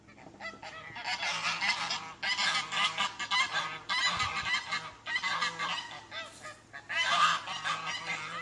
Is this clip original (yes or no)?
yes